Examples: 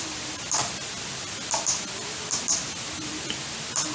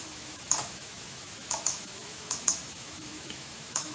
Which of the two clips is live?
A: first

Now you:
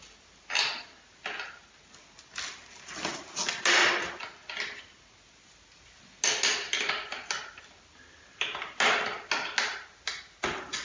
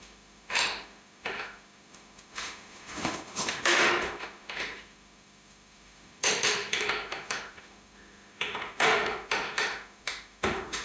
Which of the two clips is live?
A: first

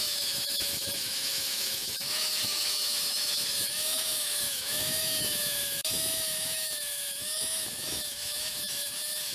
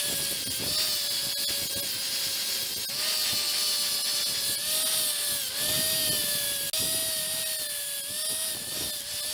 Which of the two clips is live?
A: second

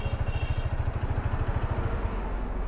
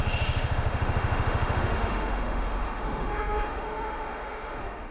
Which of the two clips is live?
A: first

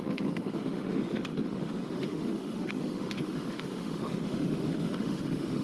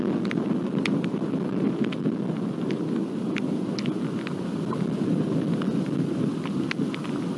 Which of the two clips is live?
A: second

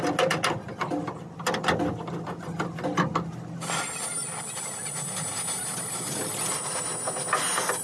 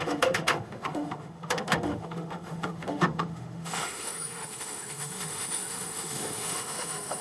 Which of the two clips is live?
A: first